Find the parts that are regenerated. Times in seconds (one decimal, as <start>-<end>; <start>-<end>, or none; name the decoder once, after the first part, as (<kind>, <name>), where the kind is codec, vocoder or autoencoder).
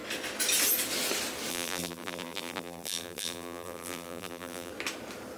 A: 1.5-4.7 (vocoder, BigVGAN v2)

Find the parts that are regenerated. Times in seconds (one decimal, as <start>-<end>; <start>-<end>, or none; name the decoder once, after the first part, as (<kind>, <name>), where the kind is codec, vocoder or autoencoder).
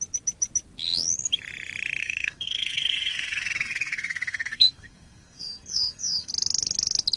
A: 2.0-6.3 (codec, SNAC)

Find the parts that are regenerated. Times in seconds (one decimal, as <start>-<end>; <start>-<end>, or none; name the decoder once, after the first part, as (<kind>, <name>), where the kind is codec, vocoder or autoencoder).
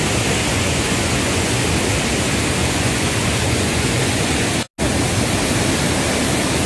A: 0.5-1.6 (vocoder, Vocos); 2.6-4.5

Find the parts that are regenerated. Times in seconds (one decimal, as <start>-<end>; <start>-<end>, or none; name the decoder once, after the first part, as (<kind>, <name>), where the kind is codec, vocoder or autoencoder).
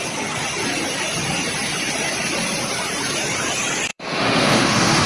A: 3.9-5.1 (autoencoder, DAC-VAE)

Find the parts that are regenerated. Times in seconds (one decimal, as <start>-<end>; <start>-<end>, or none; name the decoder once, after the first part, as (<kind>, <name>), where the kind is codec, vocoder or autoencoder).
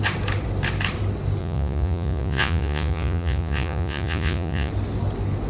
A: 1.4-4.7 (vocoder, Vocos)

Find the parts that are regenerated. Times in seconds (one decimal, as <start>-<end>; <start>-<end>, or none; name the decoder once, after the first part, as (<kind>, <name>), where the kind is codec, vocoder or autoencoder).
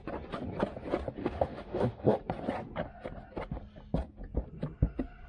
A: 1.2-2.2 (autoencoder, DAC-VAE)